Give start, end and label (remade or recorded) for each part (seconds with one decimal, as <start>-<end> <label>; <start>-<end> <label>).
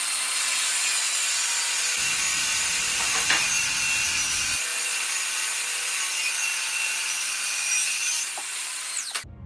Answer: 0.0-2.3 recorded; 2.3-3.5 remade; 3.5-4.7 recorded; 4.7-5.5 remade; 5.5-6.5 recorded; 6.5-8.9 remade; 8.9-9.5 recorded